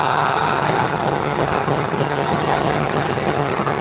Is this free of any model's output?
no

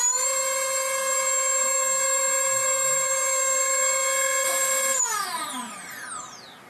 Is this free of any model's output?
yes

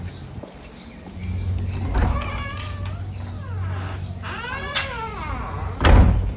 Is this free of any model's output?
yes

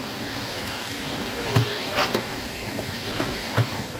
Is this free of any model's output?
no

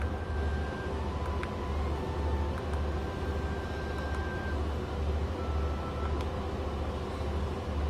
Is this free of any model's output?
yes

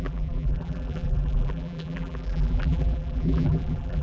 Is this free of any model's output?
no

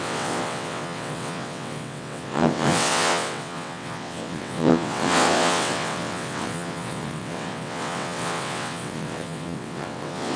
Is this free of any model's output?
no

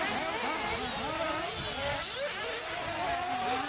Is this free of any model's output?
yes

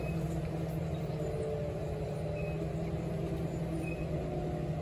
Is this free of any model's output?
yes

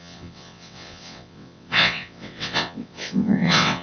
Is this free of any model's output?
no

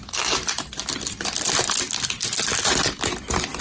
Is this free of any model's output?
yes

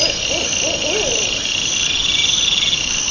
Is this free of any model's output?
yes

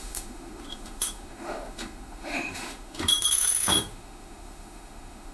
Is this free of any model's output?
no